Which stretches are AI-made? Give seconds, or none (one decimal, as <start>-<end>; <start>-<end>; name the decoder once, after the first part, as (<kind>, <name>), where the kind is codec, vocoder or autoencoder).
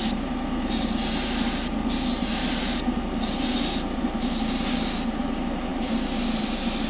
5.7-6.9 (vocoder, BigVGAN v2)